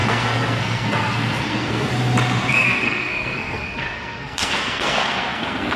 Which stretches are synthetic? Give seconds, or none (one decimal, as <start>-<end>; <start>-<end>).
0.0-1.9; 2.5-5.8